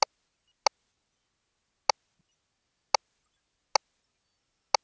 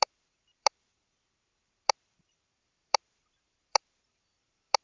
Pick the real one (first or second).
first